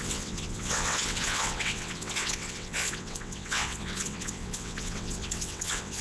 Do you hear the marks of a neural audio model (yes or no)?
yes